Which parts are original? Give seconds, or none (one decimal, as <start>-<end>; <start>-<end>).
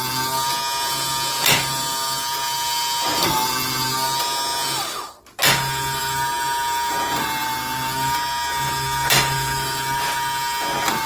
0.0-11.1